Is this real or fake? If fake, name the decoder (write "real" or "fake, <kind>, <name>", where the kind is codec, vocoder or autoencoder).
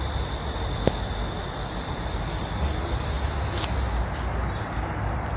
real